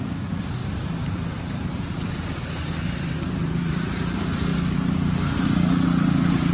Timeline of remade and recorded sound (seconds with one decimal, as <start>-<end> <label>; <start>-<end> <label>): 0.0-0.6 recorded; 0.6-3.9 remade; 3.9-6.5 recorded